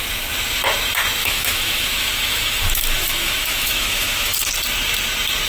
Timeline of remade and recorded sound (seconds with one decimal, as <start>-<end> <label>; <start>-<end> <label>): 0.0-1.2 recorded; 1.2-4.5 remade; 4.5-5.5 recorded

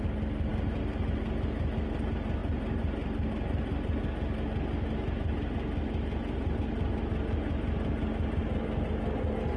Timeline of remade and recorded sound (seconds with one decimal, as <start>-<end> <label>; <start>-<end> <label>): 0.0-8.4 recorded; 8.4-8.9 remade; 8.9-9.6 recorded

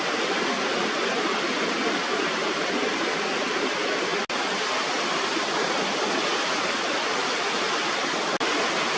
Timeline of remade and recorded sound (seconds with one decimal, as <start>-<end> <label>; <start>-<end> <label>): 0.0-9.0 recorded

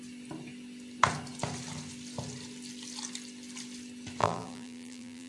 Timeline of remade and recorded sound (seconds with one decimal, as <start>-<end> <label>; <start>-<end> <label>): 0.0-4.2 recorded; 4.2-5.3 remade

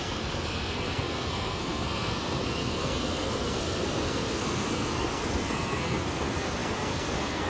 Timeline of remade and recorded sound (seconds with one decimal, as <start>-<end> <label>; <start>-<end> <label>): 0.0-7.5 remade

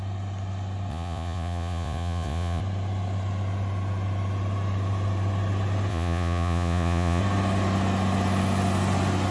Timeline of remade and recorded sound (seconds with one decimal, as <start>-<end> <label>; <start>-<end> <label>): 0.0-0.9 recorded; 0.9-2.6 remade; 2.6-5.9 recorded; 5.9-7.2 remade; 7.2-9.3 recorded

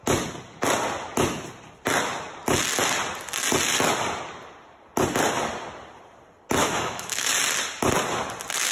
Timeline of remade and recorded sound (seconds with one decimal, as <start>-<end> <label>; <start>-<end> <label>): 0.0-6.6 recorded; 6.6-7.3 remade; 7.3-8.7 recorded

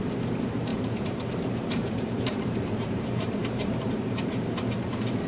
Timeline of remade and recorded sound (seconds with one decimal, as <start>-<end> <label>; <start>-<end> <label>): 0.0-0.7 recorded; 0.7-3.9 remade; 3.9-5.3 recorded